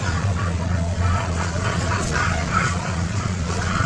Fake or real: fake